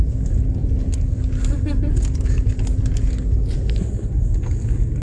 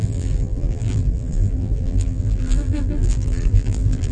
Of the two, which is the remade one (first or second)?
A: second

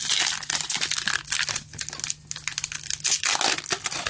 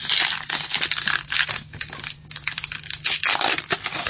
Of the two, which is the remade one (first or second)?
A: second